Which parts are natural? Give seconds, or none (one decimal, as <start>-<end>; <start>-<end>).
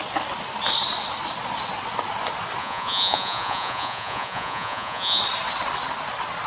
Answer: 0.0-2.6; 5.2-6.5